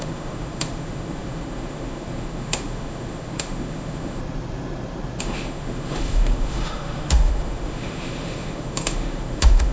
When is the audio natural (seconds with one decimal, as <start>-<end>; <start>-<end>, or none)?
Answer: 4.2-5.2